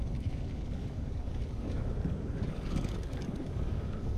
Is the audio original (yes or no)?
no